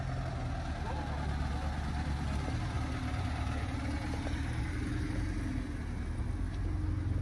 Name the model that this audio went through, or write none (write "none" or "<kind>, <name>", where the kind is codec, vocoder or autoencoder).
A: none